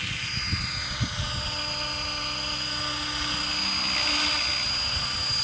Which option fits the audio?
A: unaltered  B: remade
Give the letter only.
A